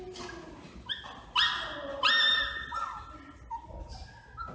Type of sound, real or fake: real